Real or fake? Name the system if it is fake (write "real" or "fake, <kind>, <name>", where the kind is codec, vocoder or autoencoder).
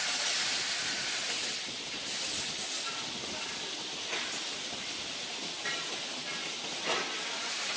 real